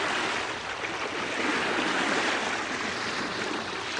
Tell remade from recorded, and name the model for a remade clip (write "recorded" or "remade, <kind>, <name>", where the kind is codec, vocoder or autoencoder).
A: recorded